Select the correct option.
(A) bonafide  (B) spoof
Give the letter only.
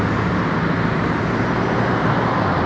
A